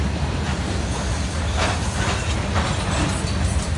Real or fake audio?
real